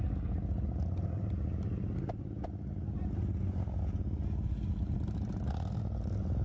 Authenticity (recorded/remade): recorded